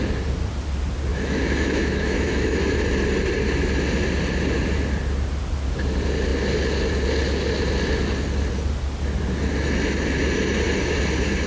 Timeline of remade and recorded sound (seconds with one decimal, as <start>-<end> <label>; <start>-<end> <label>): 0.0-1.1 recorded; 1.1-2.8 remade; 2.8-11.5 recorded